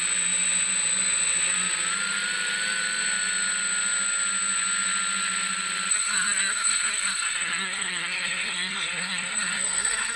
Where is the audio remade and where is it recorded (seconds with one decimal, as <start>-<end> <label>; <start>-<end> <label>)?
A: 0.0-5.9 recorded; 5.9-10.2 remade